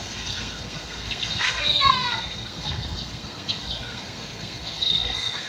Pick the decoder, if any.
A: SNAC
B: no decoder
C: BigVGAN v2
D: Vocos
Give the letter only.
A